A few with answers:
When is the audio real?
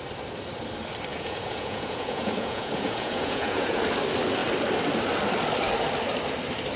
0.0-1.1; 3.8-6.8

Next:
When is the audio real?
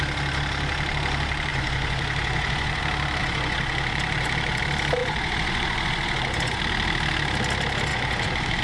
0.0-1.5; 2.8-3.2; 4.6-5.0; 6.6-7.9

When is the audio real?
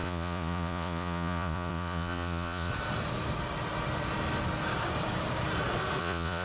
2.7-6.0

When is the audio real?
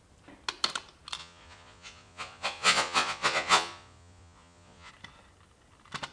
0.0-1.2; 4.9-6.1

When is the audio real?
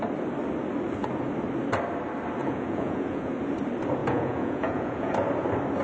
0.0-2.4; 3.3-4.0; 5.1-5.8